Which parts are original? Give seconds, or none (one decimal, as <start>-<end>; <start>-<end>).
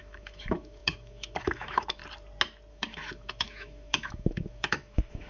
2.0-2.7